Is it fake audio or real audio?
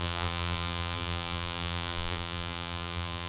fake